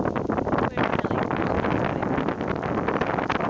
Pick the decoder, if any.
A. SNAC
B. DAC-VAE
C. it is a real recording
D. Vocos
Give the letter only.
C